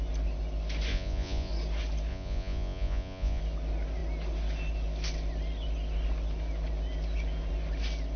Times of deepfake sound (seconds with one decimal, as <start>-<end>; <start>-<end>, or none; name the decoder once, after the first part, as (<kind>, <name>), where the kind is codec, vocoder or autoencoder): 0.9-1.5 (vocoder, Vocos); 2.1-3.4